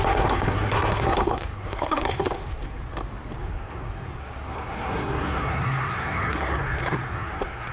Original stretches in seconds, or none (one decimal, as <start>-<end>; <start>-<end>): 2.8-3.4